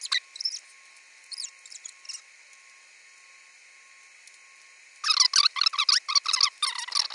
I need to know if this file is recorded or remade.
recorded